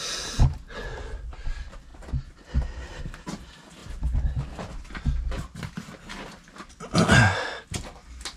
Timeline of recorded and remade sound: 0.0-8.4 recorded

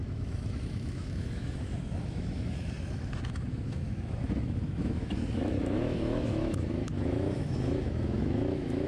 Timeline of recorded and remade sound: 0.0-8.9 remade

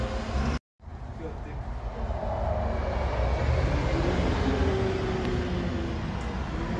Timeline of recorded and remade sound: 0.0-6.8 recorded

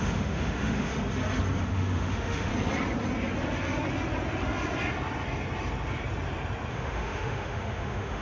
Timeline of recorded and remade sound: 0.0-0.9 remade; 0.9-1.6 recorded; 1.6-2.5 remade; 2.5-6.7 recorded; 6.7-8.2 remade

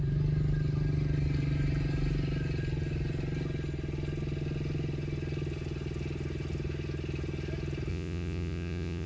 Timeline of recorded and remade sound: 0.0-7.9 recorded; 7.9-9.1 remade

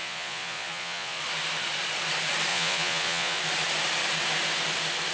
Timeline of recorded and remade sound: 0.0-1.2 remade; 1.2-2.5 recorded; 2.5-3.4 remade; 3.4-5.1 recorded